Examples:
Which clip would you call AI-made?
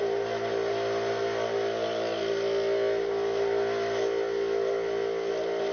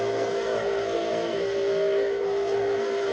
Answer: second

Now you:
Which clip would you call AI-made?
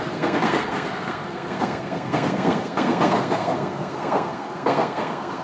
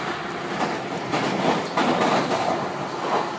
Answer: first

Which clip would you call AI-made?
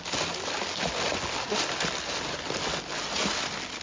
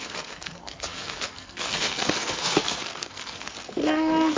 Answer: second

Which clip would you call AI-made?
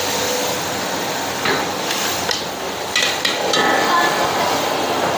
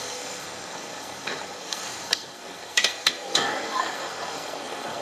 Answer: second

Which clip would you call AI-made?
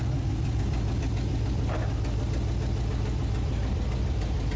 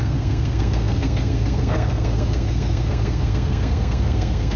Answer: second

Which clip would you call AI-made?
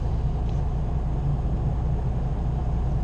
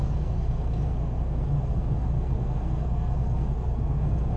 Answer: second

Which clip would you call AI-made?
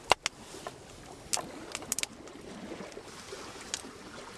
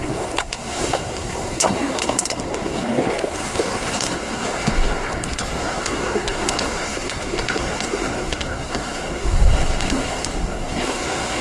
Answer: second